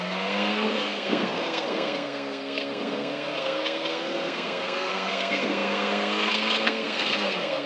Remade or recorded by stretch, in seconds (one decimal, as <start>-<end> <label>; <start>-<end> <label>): 0.0-7.7 remade